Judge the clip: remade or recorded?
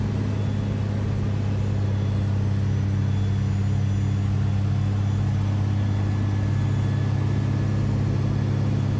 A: recorded